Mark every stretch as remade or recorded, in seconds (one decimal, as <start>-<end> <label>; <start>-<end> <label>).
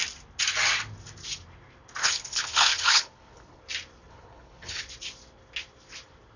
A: 0.0-2.0 recorded; 2.0-3.6 remade; 3.6-4.1 recorded; 4.1-4.8 remade; 4.8-6.4 recorded